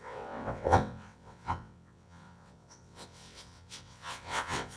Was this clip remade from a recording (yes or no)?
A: yes